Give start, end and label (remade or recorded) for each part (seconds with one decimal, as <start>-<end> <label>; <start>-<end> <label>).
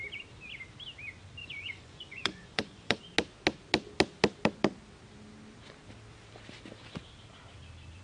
0.0-1.4 recorded; 1.4-3.0 remade; 3.0-8.0 recorded